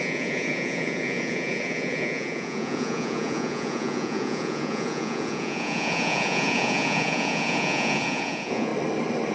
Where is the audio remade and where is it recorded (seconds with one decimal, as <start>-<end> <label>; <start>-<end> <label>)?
0.0-8.7 remade; 8.7-9.3 recorded